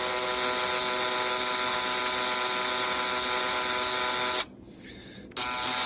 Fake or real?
real